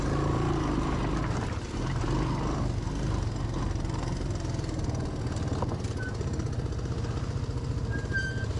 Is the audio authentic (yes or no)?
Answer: yes